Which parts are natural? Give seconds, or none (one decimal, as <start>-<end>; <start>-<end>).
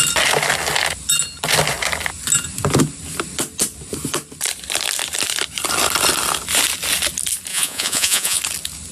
0.0-7.5; 8.4-8.9